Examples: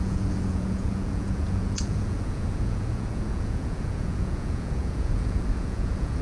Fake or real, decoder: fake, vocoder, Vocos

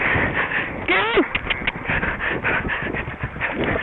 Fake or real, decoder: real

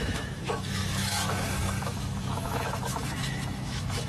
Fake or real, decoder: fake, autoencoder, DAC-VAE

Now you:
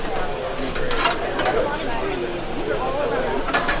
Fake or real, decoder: real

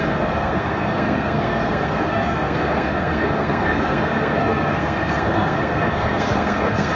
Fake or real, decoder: fake, codec, SNAC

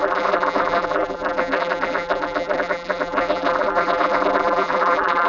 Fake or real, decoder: fake, vocoder, BigVGAN v2